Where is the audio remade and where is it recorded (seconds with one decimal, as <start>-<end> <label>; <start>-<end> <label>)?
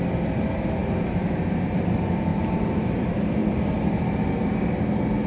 0.0-0.8 recorded; 0.8-1.4 remade; 1.4-2.3 recorded; 2.3-3.0 remade; 3.0-5.3 recorded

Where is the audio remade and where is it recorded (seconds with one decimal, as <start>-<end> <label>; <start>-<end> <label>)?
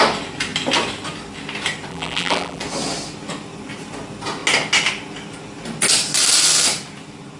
0.0-1.9 recorded; 1.9-2.6 remade; 2.6-7.4 recorded